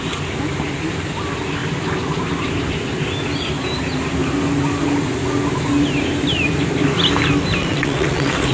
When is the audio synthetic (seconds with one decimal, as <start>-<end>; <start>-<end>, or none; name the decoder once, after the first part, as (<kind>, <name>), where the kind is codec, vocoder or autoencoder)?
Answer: 7.6-8.5 (vocoder, WaveNeXt)